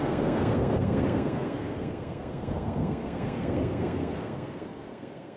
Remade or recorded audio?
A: remade